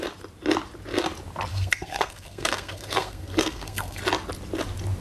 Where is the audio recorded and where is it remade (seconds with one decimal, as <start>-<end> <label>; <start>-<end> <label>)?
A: 0.0-1.5 recorded; 1.5-4.0 remade; 4.0-5.0 recorded